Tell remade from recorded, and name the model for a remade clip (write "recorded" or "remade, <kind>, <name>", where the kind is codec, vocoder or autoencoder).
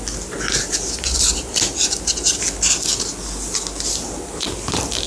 recorded